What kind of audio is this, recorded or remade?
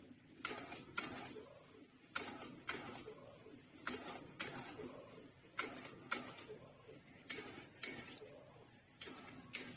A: recorded